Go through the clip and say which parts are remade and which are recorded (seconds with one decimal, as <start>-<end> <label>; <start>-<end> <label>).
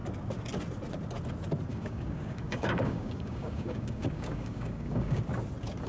0.0-1.7 recorded; 1.7-5.2 remade; 5.2-5.9 recorded